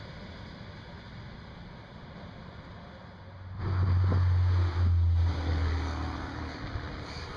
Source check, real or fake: real